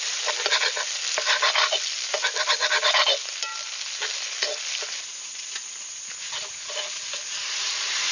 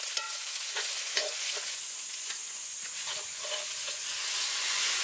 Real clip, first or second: first